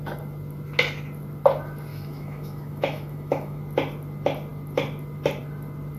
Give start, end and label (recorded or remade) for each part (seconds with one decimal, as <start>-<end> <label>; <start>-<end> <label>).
0.0-1.9 recorded; 1.9-3.6 remade; 3.6-6.0 recorded